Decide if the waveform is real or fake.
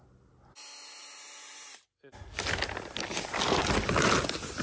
real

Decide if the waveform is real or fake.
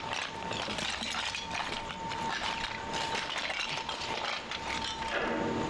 fake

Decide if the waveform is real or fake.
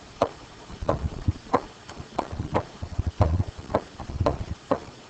fake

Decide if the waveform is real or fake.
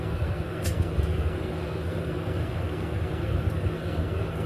fake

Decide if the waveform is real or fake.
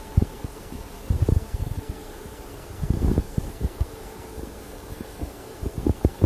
fake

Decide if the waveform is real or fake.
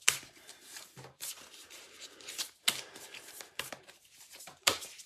fake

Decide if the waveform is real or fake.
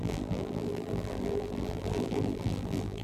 fake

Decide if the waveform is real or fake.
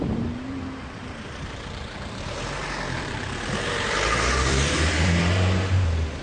fake